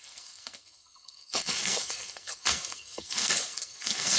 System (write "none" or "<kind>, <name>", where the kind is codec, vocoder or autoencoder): codec, SNAC